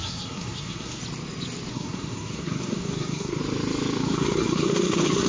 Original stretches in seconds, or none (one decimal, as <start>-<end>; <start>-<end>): 1.0-1.7; 3.4-4.0